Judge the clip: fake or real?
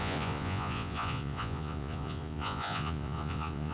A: fake